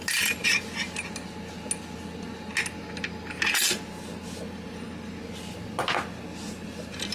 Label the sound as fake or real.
real